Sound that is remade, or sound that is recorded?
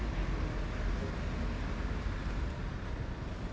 recorded